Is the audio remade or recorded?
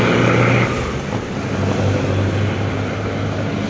recorded